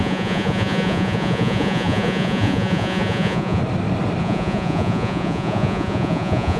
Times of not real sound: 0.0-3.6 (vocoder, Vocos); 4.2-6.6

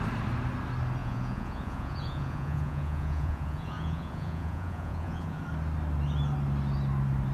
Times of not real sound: 1.0-5.4 (vocoder, Vocos)

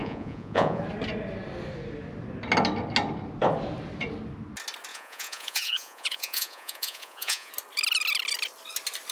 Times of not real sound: 0.0-0.8 (vocoder, Vocos); 4.9-7.5

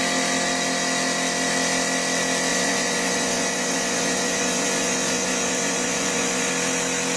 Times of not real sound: 2.5-6.5 (vocoder, Vocos)